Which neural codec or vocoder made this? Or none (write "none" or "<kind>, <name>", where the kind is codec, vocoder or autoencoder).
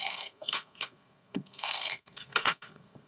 codec, SNAC